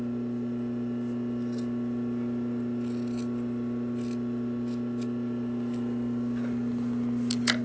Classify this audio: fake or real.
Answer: real